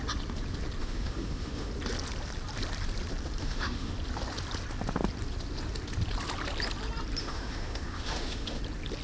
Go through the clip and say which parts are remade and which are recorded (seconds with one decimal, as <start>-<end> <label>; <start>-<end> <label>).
0.0-0.8 recorded; 0.8-1.7 remade; 1.7-3.4 recorded; 3.4-3.9 remade; 3.9-7.2 recorded; 7.2-8.6 remade; 8.6-9.0 recorded